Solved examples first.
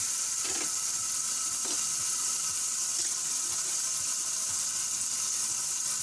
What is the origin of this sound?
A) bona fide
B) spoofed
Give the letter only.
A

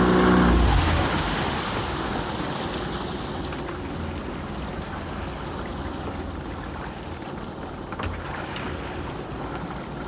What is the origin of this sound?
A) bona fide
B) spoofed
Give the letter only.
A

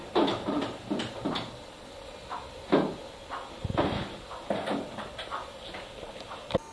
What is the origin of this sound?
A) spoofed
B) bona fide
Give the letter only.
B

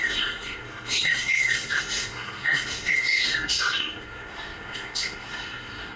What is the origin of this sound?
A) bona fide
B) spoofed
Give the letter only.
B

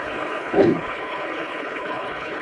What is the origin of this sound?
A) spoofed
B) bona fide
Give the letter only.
A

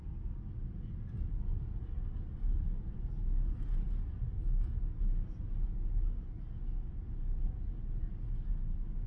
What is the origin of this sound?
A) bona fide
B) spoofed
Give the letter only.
A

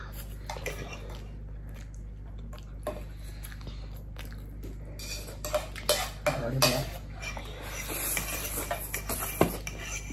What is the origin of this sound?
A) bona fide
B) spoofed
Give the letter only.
A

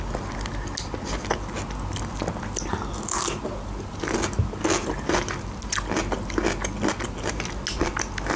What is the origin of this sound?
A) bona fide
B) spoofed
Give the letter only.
A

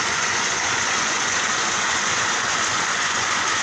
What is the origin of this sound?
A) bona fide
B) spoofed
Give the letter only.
B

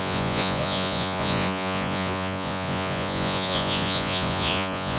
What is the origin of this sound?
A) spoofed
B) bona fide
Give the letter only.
A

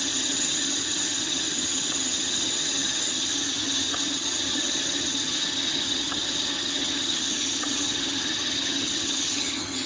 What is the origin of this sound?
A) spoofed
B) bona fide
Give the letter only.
A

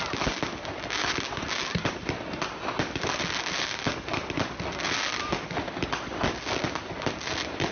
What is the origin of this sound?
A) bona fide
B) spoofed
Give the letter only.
A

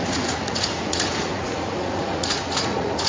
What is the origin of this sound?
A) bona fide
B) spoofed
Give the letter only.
B